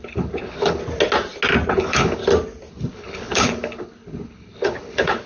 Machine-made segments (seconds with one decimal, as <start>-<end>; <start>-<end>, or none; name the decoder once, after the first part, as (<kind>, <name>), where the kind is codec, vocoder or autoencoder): 0.0-0.8 (codec, HILCodec); 1.7-2.2; 2.7-5.3